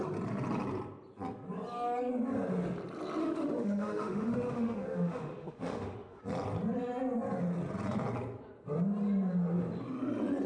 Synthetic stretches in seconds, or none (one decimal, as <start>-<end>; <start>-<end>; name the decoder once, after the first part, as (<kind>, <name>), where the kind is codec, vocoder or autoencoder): 3.2-6.2 (autoencoder, DAC-VAE)